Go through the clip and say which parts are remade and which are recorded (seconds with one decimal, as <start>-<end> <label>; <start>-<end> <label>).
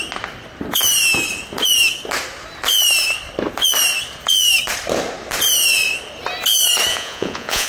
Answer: 0.0-6.9 recorded; 6.9-7.7 remade